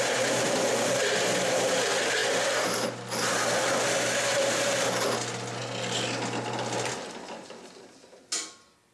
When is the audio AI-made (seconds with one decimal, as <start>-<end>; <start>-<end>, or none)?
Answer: none